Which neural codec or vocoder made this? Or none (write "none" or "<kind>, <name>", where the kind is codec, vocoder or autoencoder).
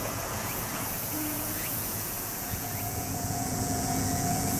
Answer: vocoder, Vocos